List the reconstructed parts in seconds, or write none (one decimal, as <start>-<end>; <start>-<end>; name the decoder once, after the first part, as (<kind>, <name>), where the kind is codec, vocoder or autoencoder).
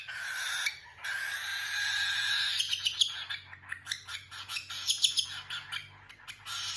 1.5-3.3 (vocoder, Vocos); 4.1-5.2